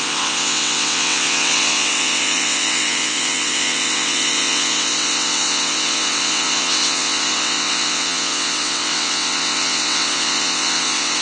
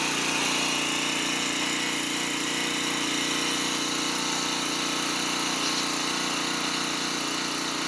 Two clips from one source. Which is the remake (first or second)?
first